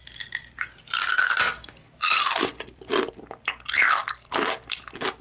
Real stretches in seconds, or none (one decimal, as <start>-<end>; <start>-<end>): 3.1-5.2